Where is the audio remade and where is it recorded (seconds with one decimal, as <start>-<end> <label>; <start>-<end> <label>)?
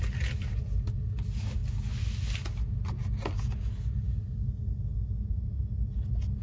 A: 0.0-6.4 recorded